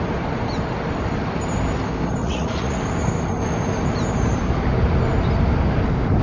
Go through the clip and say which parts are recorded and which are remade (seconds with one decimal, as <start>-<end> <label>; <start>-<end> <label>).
0.0-2.2 recorded; 2.2-2.8 remade; 2.8-6.2 recorded